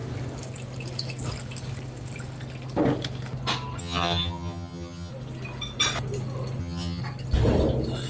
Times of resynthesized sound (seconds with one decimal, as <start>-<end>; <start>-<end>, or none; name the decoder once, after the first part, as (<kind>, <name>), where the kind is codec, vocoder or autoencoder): 3.8-5.1 (vocoder, HiFi-GAN); 6.6-7.0